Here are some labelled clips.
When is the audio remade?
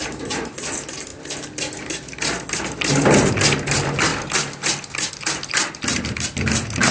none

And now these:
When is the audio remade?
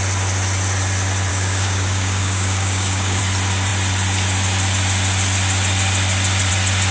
1.3-3.2 (codec, DAC)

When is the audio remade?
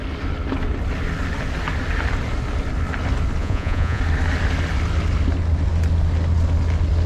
3.4-4.0 (vocoder, Vocos)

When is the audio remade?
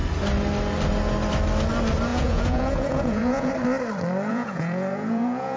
2.1-3.5 (vocoder, Vocos); 4.3-5.6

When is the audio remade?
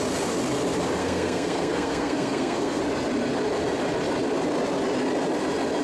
1.0-2.8 (codec, SNAC)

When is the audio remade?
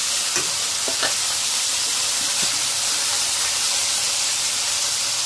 0.0-5.3 (vocoder, BigVGAN v2)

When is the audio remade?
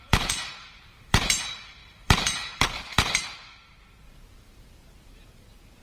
0.0-5.8 (vocoder, BigVGAN v2)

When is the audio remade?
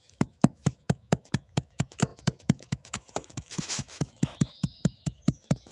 0.0-5.7 (autoencoder, DAC-VAE)